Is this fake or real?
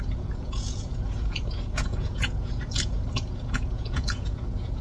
fake